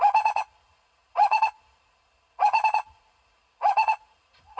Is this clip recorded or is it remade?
remade